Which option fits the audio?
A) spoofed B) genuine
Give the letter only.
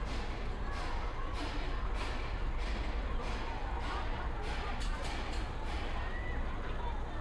B